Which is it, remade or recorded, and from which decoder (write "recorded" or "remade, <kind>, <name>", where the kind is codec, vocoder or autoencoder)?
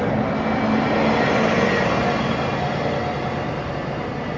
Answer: recorded